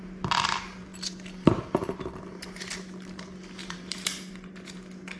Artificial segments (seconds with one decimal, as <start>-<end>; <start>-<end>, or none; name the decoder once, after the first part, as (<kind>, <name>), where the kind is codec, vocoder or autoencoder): 3.6-4.3 (vocoder, BigVGAN v2)